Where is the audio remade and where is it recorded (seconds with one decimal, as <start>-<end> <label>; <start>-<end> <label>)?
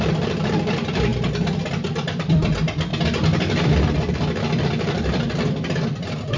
0.0-1.1 remade; 1.1-1.7 recorded; 1.7-2.9 remade; 2.9-4.6 recorded; 4.6-6.4 remade